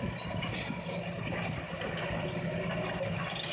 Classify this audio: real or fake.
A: real